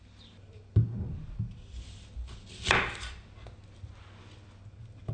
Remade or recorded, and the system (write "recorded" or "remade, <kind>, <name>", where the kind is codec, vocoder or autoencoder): recorded